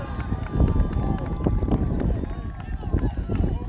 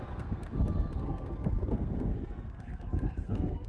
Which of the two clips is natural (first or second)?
first